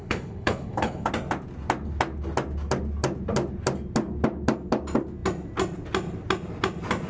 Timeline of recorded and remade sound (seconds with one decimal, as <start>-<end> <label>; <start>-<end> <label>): 0.0-1.1 remade; 1.1-7.1 recorded